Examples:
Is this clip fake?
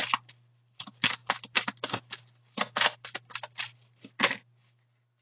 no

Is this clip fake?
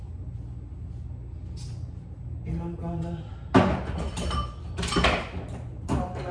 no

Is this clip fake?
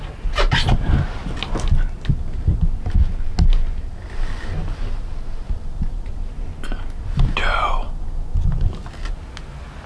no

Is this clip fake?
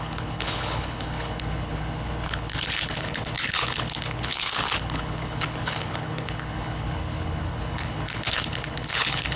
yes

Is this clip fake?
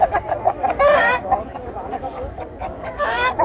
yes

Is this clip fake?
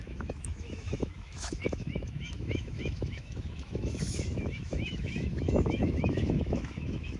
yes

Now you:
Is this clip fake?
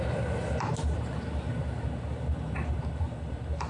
no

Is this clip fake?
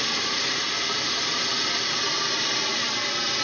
no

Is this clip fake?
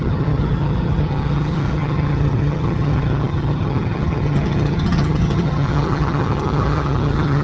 yes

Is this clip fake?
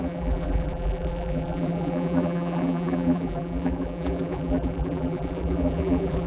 yes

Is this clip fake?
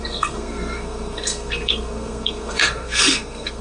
yes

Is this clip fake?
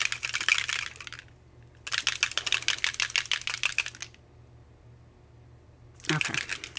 no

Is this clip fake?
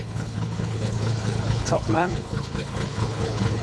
yes